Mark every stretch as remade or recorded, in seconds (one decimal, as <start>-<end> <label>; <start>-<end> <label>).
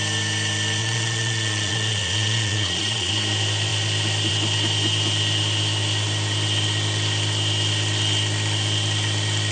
0.0-0.8 recorded; 0.8-3.1 remade; 3.1-9.5 recorded